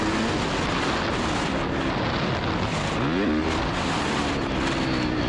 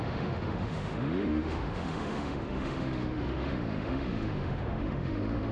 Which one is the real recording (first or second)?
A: first